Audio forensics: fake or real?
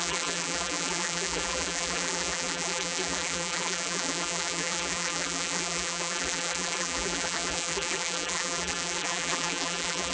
fake